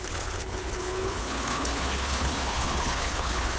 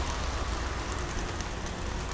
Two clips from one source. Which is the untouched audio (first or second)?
second